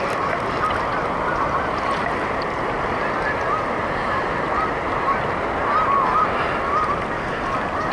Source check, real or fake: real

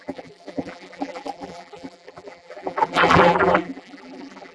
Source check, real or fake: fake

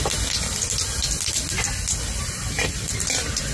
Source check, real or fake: real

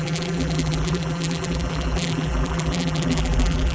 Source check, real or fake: fake